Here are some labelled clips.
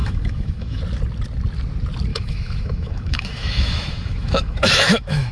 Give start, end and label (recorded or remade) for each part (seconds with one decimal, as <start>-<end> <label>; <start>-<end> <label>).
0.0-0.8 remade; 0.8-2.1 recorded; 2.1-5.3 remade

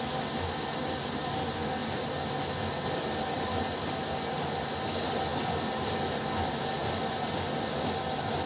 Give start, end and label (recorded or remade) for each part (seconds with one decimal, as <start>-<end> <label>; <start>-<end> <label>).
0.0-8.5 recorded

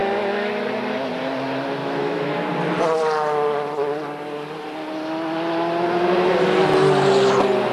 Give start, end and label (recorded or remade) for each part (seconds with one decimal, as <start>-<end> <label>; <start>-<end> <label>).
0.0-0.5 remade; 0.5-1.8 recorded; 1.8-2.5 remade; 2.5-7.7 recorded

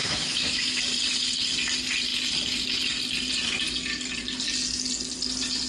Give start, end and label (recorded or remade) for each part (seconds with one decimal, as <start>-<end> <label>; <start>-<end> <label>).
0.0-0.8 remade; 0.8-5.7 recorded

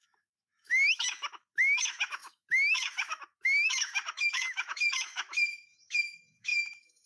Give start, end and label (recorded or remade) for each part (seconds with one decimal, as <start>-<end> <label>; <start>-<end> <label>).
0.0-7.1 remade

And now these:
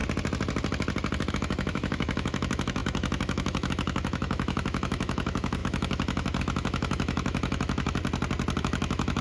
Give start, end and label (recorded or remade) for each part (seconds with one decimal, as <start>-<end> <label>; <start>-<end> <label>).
0.0-1.3 recorded; 1.3-8.0 remade; 8.0-8.6 recorded; 8.6-9.2 remade

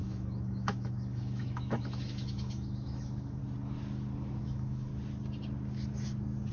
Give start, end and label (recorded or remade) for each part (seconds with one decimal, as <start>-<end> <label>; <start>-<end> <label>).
0.0-3.4 remade; 3.4-4.4 recorded; 4.4-4.9 remade; 4.9-6.5 recorded

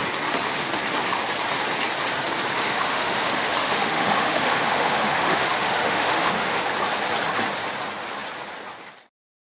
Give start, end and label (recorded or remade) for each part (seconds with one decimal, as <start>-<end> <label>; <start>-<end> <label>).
0.0-2.5 recorded; 2.5-6.7 remade; 6.7-9.6 recorded